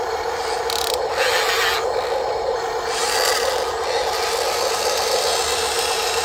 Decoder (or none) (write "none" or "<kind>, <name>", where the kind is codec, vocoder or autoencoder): none